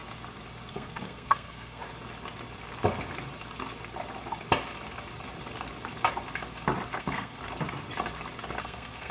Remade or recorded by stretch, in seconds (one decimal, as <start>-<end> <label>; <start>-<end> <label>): 0.0-0.7 recorded; 0.7-1.8 remade; 1.8-7.0 recorded; 7.0-7.4 remade; 7.4-8.6 recorded; 8.6-9.1 remade